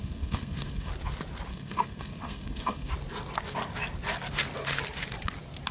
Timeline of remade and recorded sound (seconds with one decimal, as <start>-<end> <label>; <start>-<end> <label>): 0.0-0.9 remade; 0.9-1.5 recorded; 1.5-2.9 remade; 2.9-5.7 recorded

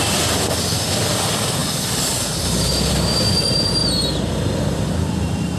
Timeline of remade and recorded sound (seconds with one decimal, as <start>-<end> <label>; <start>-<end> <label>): 0.0-1.6 recorded; 1.6-3.7 remade; 3.7-5.6 recorded

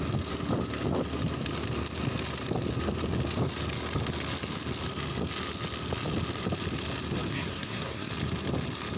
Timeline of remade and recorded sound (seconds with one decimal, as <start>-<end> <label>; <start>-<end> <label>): 0.0-7.3 recorded; 7.3-8.1 remade; 8.1-9.0 recorded

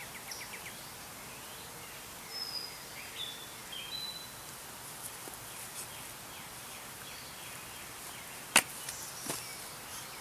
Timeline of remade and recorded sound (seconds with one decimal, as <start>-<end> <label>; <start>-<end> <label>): 0.0-10.2 recorded

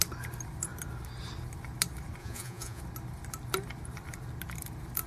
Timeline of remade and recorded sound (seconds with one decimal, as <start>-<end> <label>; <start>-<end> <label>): 0.0-2.2 recorded; 2.2-2.8 remade; 2.8-5.1 recorded

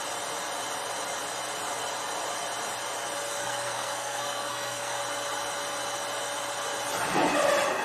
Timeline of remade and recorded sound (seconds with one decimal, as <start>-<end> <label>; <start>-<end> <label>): 0.0-3.4 recorded; 3.4-5.0 remade; 5.0-7.8 recorded